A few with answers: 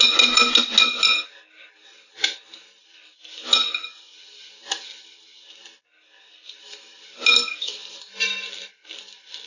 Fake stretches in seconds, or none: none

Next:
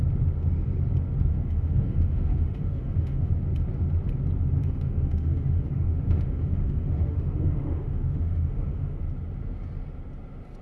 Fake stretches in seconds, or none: 1.3-3.3 (autoencoder, DAC-VAE); 4.6-9.0

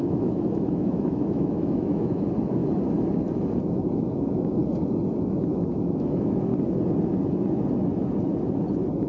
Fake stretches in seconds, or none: 0.0-2.6 (autoencoder, DAC-VAE); 3.6-4.6; 5.2-6.5

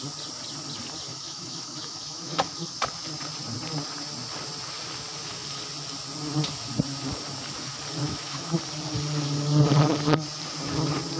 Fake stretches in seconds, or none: 1.1-2.8 (autoencoder, DAC-VAE); 8.0-8.6

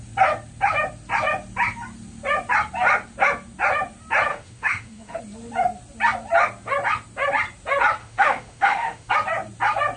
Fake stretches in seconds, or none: 4.3-5.2 (autoencoder, DAC-VAE); 8.0-9.1

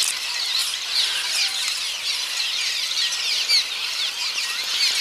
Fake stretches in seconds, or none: none

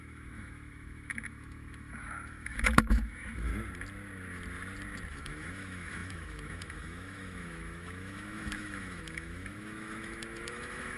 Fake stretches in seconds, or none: 0.0-3.5 (autoencoder, DAC-VAE); 5.1-11.0